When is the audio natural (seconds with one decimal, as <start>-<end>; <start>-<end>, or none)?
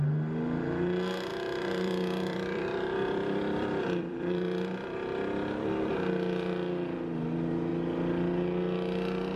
0.0-1.3; 5.9-9.4